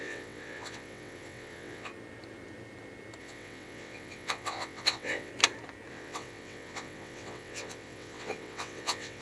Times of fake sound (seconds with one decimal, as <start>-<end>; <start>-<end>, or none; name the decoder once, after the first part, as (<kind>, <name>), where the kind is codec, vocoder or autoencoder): 0.0-1.9 (vocoder, WaveNeXt); 3.2-5.3; 5.9-9.2